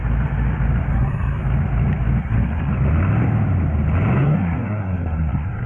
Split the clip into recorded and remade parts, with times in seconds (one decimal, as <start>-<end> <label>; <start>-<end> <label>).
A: 0.0-0.9 recorded; 0.9-1.4 remade; 1.4-2.2 recorded; 2.2-2.7 remade; 2.7-4.2 recorded; 4.2-5.7 remade